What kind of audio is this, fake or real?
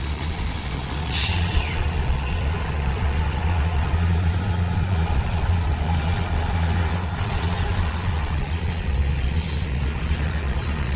fake